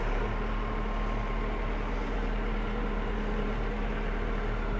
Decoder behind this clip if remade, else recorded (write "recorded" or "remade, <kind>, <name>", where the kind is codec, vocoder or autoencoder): remade, vocoder, BigVGAN v2